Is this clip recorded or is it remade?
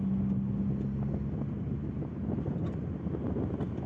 recorded